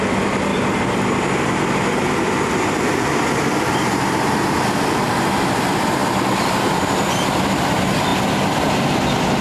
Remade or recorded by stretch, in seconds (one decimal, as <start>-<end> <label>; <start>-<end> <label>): 0.0-0.5 remade; 0.5-3.3 recorded; 3.3-6.0 remade; 6.0-6.5 recorded; 6.5-9.4 remade